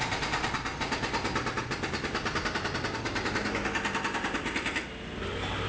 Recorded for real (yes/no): yes